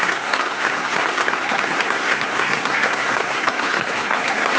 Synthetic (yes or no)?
yes